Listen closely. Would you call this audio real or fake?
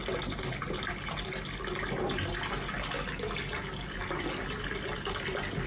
real